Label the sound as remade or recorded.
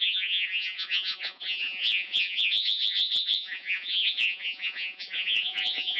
remade